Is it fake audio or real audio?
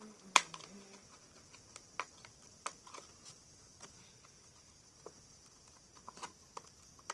real